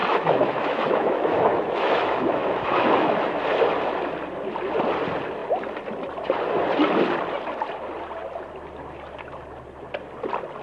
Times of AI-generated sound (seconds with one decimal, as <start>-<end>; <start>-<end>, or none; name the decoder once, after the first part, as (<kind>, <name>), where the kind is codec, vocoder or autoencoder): 0.0-3.4 (autoencoder, DAC-VAE)